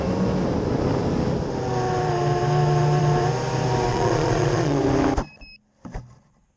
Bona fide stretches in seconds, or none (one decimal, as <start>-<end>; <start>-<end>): 0.0-3.9; 4.8-6.6